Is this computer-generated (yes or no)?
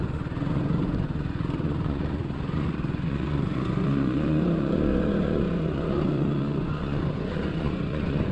yes